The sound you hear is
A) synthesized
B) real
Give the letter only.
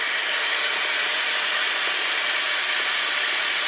B